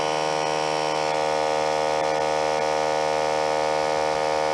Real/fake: real